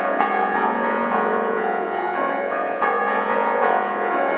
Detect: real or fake fake